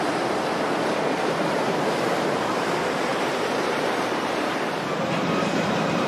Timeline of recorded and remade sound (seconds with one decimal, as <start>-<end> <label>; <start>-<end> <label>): 0.0-6.1 remade